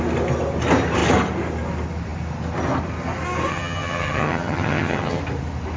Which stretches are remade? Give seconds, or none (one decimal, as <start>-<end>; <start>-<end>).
3.5-5.2